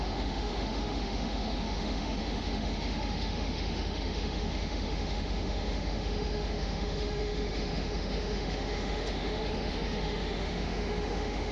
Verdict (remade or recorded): remade